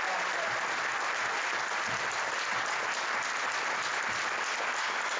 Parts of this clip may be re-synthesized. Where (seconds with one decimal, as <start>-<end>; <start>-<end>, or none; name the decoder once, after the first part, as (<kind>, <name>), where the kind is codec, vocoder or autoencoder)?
none